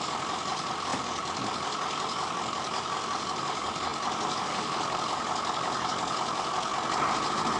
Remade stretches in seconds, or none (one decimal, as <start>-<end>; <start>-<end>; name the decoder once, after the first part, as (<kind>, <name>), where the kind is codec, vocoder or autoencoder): 0.0-6.7 (codec, DAC)